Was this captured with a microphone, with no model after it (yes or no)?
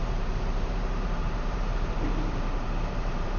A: no